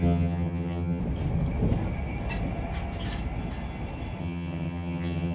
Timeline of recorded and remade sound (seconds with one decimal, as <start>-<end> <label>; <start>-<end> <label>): 0.0-1.0 remade; 1.0-4.2 recorded; 4.2-5.3 remade

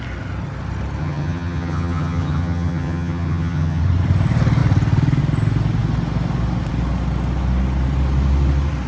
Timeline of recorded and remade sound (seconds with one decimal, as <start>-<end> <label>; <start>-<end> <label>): 0.0-1.0 recorded; 1.0-3.8 remade; 3.8-8.9 recorded